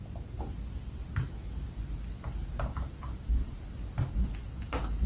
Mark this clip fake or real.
real